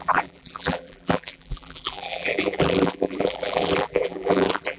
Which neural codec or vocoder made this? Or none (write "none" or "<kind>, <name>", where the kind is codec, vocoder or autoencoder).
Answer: vocoder, BigVGAN v2